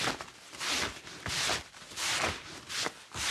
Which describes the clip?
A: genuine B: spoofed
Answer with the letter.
A